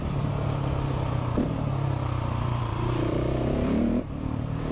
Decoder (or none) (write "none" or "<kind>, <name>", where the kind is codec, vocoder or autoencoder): vocoder, BigVGAN v2